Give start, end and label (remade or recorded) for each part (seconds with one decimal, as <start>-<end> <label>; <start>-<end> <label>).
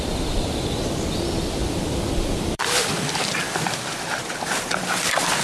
0.0-1.6 recorded; 1.6-4.8 remade; 4.8-5.4 recorded